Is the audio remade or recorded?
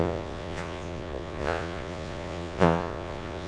remade